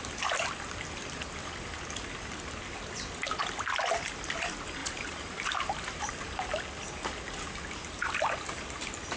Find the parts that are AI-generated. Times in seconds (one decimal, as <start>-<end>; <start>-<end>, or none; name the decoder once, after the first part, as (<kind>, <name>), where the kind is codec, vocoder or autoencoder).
4.8-6.1 (vocoder, BigVGAN v2)